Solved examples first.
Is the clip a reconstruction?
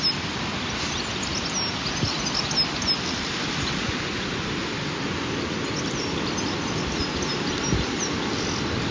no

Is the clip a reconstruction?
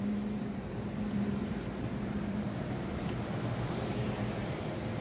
yes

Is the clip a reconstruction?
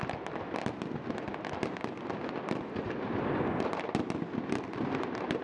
no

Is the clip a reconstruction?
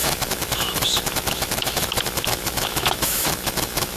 yes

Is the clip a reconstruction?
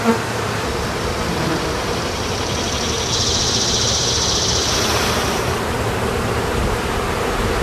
yes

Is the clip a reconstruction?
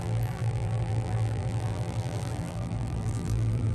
yes